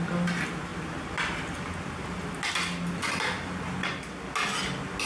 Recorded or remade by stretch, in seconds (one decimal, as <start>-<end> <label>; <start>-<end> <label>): 0.0-5.1 recorded